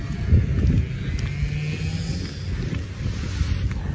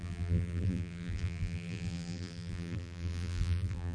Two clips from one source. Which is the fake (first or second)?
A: second